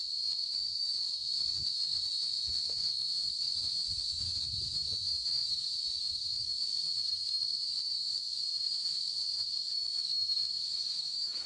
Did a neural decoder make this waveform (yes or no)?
yes